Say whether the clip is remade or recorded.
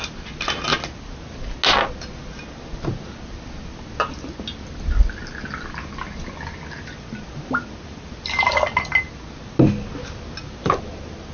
recorded